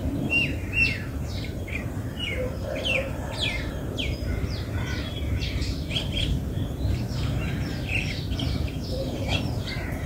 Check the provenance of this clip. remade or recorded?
remade